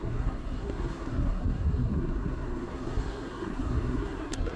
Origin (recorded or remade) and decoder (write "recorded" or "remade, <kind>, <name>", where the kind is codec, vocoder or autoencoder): remade, codec, SNAC